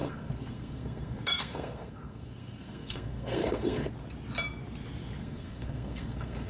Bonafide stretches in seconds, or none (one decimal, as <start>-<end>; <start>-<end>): 3.9-5.2